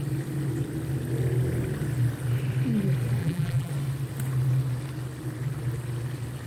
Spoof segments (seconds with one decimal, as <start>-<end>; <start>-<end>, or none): 3.2-3.7